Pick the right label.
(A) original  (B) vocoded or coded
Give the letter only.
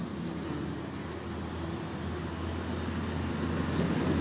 A